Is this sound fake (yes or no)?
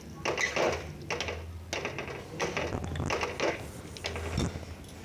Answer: no